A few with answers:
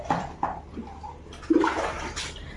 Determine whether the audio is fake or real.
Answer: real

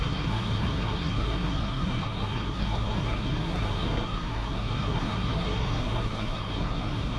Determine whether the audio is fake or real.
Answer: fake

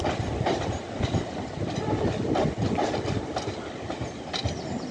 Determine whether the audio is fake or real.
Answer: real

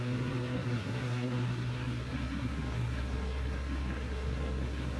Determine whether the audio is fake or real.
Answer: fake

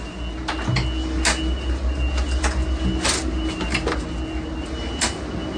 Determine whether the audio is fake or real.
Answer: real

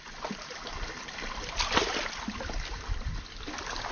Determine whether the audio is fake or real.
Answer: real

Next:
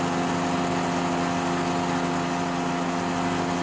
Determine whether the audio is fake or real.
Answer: real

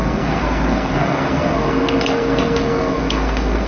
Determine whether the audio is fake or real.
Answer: fake